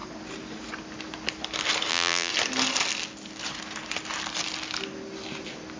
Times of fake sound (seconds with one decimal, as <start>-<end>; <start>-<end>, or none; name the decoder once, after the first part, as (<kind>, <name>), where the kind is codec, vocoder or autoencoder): 1.9-2.3 (vocoder, BigVGAN v2)